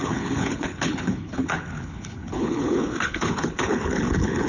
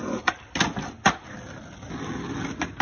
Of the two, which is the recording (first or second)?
second